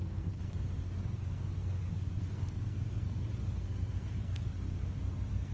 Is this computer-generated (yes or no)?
yes